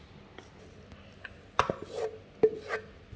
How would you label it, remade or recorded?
recorded